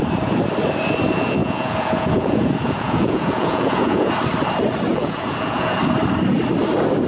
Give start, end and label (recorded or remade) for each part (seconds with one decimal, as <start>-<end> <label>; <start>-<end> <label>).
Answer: 0.0-1.4 recorded; 1.4-4.1 remade; 4.1-4.9 recorded; 4.9-5.8 remade; 5.8-7.1 recorded

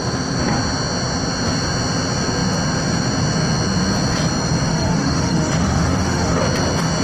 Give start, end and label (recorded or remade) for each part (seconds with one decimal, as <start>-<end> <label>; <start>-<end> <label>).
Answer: 0.0-4.7 recorded; 4.7-6.4 remade; 6.4-7.0 recorded